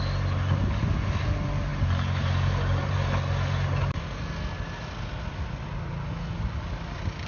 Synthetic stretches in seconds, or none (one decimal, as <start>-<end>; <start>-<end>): none